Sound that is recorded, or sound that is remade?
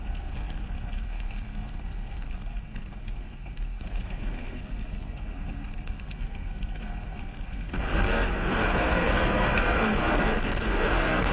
remade